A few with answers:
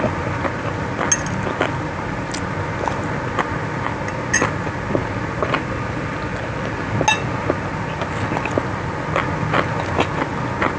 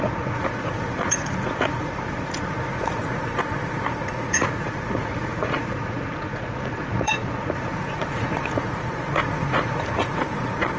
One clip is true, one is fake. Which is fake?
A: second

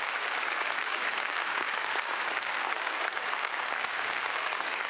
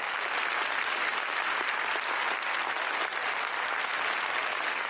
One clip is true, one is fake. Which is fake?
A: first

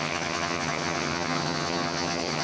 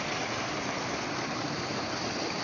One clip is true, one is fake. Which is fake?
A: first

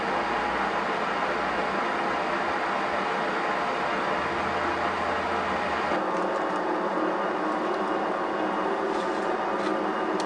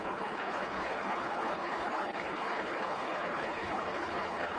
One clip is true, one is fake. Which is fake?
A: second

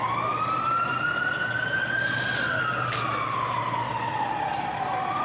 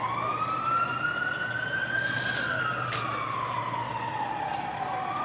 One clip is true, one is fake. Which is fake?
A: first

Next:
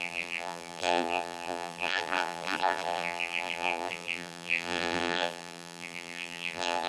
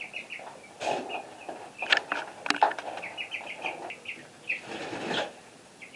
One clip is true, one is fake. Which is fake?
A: first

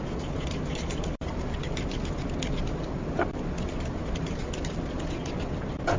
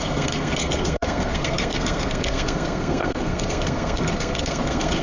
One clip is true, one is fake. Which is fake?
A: second